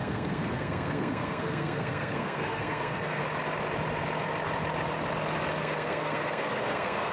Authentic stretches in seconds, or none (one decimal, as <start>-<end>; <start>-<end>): 3.2-5.6